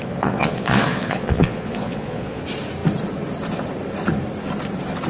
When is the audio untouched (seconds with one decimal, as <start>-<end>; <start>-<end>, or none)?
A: 2.4-5.1